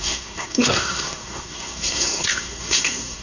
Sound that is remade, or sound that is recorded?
remade